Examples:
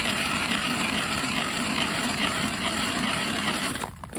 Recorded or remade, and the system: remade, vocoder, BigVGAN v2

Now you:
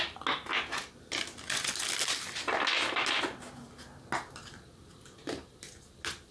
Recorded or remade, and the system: recorded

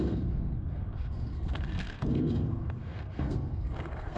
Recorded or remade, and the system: remade, codec, SNAC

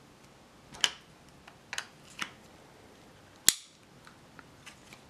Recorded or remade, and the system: recorded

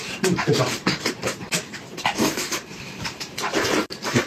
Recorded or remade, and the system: remade, vocoder, BigVGAN v2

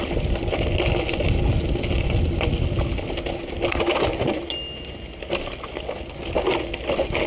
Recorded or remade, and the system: recorded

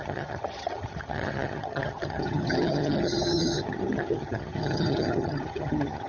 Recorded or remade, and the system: remade, vocoder, HiFi-GAN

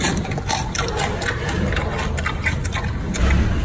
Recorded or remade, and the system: recorded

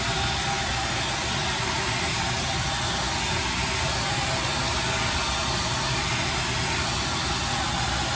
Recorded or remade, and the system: recorded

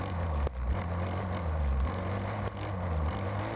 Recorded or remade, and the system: recorded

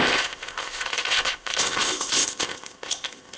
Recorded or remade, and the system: remade, codec, ZipCodec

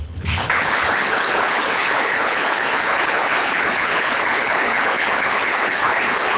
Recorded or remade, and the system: remade, codec, HILCodec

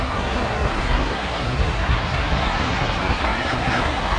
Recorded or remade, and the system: remade, codec, SNAC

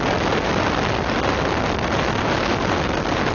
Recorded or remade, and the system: recorded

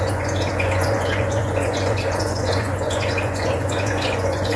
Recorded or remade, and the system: remade, vocoder, Vocos